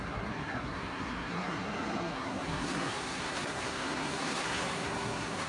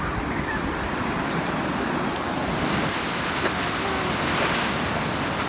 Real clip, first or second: second